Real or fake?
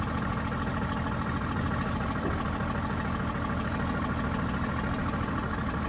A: real